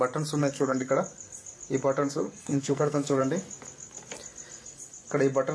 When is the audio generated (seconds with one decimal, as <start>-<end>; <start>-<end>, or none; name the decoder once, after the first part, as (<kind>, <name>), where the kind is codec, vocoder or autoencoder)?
0.4-0.9 (codec, SNAC); 2.0-3.2